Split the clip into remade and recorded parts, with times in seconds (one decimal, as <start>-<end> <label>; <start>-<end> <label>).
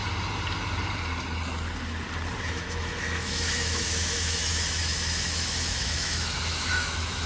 0.0-2.5 recorded; 2.5-7.3 remade